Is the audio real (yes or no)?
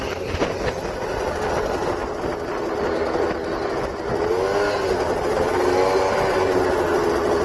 yes